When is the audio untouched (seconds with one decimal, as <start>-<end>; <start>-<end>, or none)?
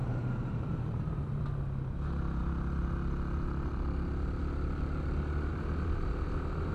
1.4-5.5